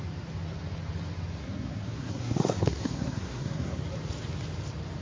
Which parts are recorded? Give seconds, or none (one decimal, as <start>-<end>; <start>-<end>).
0.0-1.4; 3.8-5.0